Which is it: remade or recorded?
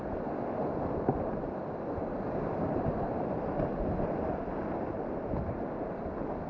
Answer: recorded